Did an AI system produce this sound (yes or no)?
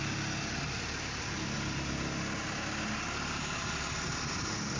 no